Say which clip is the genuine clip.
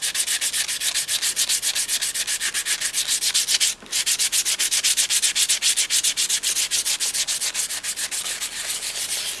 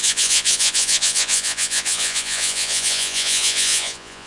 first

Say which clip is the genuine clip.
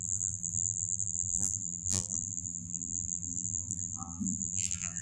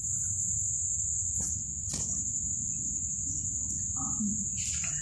second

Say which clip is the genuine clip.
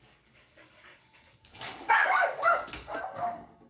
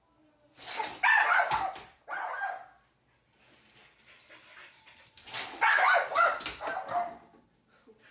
second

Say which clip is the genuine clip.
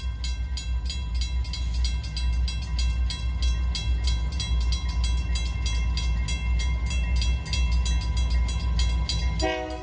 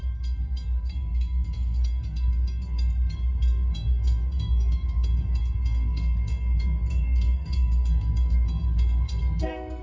first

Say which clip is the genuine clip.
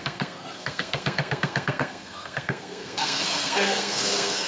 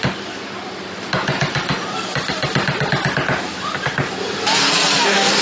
second